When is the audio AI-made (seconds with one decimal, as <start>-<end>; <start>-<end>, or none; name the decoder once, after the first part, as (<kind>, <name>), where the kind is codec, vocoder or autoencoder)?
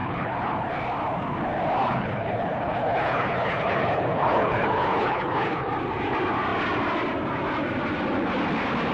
0.0-0.7 (codec, HILCodec); 1.8-5.7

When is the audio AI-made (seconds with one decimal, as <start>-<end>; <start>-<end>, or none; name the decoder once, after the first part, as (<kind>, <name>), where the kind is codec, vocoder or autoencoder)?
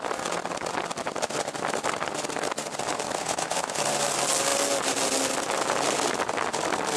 3.2-3.8 (autoencoder, DAC-VAE)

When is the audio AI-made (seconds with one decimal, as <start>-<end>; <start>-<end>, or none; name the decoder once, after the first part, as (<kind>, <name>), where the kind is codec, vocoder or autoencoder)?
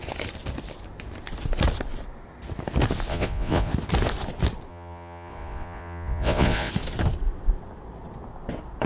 3.1-3.7 (vocoder, Vocos); 4.7-6.7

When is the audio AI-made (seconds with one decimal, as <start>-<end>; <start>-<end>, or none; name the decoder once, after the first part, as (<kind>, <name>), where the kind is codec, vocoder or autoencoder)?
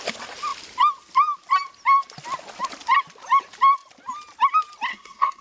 4.9-5.4 (codec, SNAC)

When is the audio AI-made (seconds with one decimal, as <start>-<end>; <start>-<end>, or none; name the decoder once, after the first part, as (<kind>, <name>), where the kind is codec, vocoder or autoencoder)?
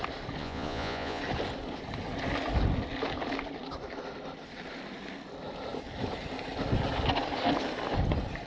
0.4-1.2 (vocoder, Vocos)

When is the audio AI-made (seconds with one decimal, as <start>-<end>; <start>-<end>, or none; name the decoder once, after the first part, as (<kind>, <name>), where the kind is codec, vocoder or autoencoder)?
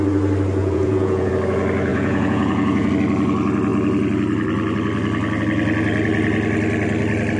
0.6-1.3 (vocoder, Vocos); 1.9-2.9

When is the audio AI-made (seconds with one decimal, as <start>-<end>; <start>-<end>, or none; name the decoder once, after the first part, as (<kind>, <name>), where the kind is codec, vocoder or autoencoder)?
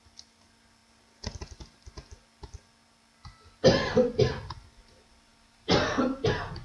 none